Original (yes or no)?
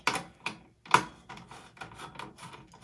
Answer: yes